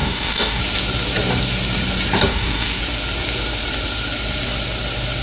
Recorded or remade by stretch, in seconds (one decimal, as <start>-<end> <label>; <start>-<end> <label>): 0.0-0.6 remade; 0.6-2.3 recorded; 2.3-2.8 remade; 2.8-5.2 recorded